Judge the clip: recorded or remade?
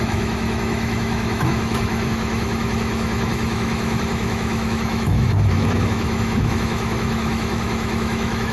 remade